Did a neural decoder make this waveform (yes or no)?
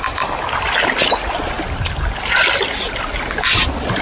no